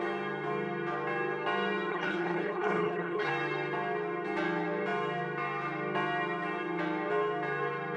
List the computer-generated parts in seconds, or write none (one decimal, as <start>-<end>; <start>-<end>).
1.9-3.3